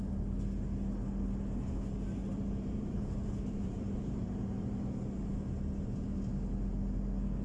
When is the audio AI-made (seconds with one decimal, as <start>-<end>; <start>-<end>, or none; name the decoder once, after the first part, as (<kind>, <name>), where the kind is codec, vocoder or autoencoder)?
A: 2.2-4.9 (vocoder, BigVGAN v2)